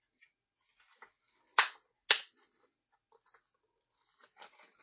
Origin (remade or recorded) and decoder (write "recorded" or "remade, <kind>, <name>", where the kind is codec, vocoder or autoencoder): recorded